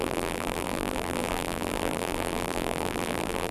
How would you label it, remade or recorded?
remade